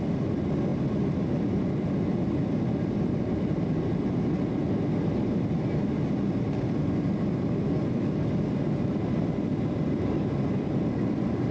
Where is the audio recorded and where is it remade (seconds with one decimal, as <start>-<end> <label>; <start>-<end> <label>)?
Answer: 0.0-11.5 recorded